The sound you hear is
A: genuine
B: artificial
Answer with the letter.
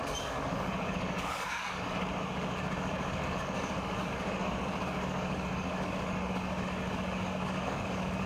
B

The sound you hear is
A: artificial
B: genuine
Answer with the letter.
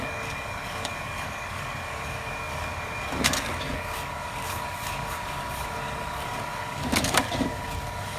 A